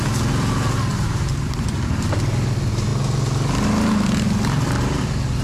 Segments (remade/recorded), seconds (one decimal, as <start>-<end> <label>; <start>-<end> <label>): 0.0-0.9 recorded; 0.9-1.9 remade; 1.9-5.4 recorded